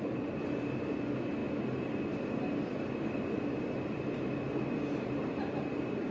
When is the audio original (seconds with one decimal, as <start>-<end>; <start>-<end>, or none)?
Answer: 0.0-6.1